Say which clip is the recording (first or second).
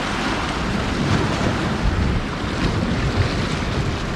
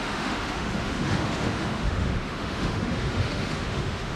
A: first